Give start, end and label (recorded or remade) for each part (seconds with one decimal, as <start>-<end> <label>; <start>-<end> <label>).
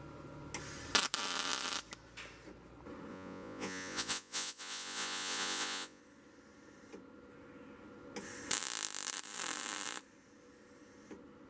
0.0-3.1 recorded; 3.1-6.0 remade; 6.0-11.5 recorded